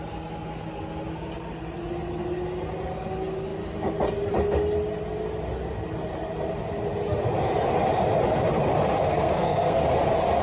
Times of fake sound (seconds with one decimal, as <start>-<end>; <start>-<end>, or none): 9.1-9.8